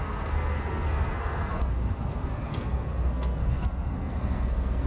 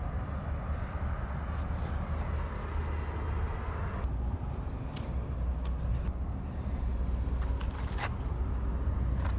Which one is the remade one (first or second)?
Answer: first